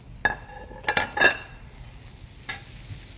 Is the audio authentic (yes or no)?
yes